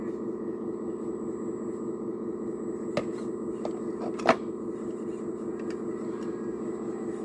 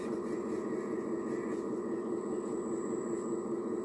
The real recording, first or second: first